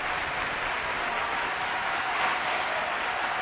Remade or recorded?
recorded